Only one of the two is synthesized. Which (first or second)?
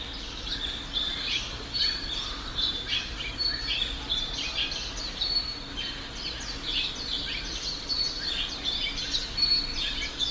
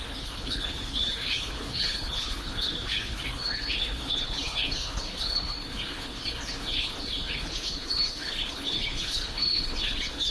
second